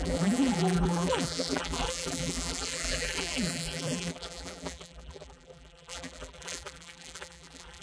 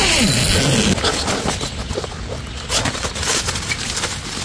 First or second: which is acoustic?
second